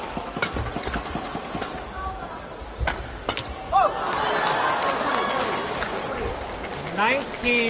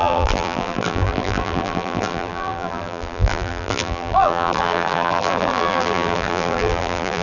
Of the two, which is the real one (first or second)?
first